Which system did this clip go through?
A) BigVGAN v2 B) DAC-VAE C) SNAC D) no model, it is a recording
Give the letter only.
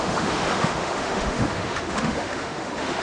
B